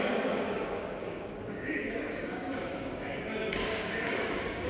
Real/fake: fake